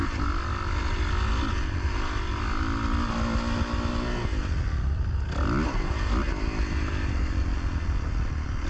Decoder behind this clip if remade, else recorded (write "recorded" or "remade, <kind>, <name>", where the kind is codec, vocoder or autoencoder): recorded